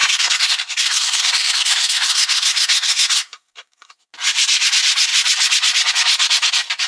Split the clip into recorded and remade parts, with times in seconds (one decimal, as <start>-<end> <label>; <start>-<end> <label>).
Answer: 0.0-4.1 remade; 4.1-6.9 recorded